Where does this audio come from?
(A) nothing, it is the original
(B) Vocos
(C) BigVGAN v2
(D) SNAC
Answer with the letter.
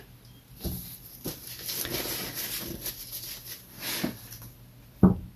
A